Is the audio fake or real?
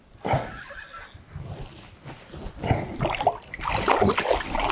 real